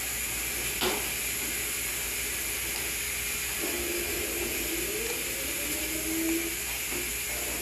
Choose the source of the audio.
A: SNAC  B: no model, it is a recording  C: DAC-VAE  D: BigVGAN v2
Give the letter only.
B